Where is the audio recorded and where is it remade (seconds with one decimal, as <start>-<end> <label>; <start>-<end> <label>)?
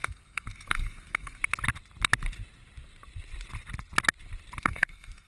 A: 0.0-1.4 remade; 1.4-4.6 recorded; 4.6-5.3 remade